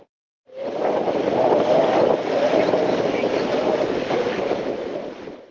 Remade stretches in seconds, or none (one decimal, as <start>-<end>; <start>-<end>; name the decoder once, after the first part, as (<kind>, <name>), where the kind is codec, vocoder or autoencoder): 0.5-1.1 (codec, DAC); 2.9-4.6